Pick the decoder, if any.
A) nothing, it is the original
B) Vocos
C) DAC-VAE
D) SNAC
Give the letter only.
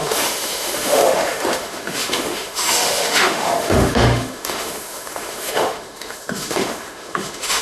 C